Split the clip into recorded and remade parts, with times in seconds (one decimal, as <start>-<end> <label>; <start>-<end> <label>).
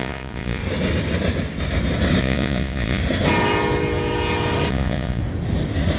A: 0.0-0.6 remade; 0.6-2.2 recorded; 2.2-3.0 remade; 3.0-4.7 recorded; 4.7-5.2 remade; 5.2-6.0 recorded